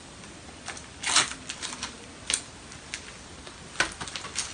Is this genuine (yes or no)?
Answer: yes